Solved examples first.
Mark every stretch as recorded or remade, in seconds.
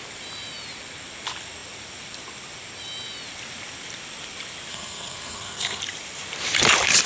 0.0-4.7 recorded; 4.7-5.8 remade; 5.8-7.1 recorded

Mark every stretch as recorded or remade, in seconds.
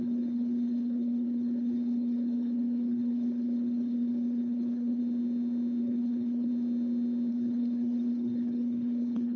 0.0-5.0 remade; 5.0-5.8 recorded; 5.8-6.5 remade; 6.5-7.3 recorded; 7.3-9.4 remade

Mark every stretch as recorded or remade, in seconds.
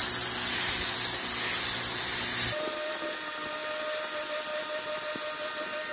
0.0-5.9 recorded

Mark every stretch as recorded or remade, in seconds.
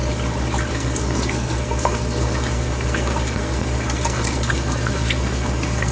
0.0-0.7 recorded; 0.7-5.9 remade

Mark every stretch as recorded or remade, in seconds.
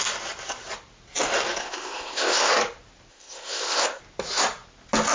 0.0-1.6 recorded; 1.6-2.5 remade; 2.5-3.1 recorded; 3.1-4.0 remade; 4.0-5.1 recorded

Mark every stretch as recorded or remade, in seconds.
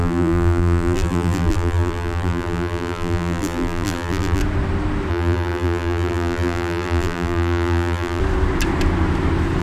0.0-4.4 remade; 4.4-5.1 recorded; 5.1-8.2 remade; 8.2-9.6 recorded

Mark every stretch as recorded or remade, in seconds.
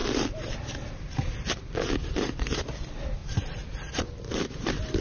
0.0-2.0 recorded; 2.0-2.6 remade; 2.6-3.2 recorded; 3.2-3.9 remade; 3.9-5.0 recorded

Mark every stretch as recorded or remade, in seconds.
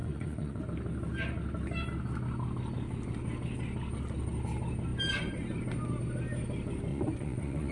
0.0-0.6 remade; 0.6-6.9 recorded; 6.9-7.7 remade